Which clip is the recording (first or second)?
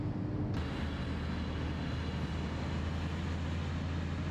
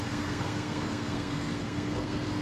first